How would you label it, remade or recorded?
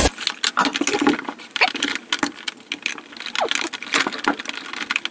recorded